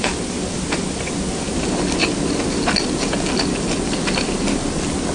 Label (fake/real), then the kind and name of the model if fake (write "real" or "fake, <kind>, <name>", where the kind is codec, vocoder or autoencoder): real